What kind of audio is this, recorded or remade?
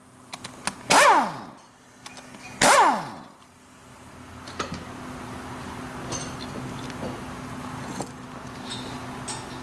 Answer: recorded